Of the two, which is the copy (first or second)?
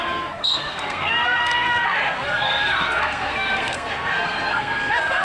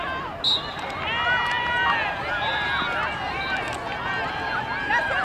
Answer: first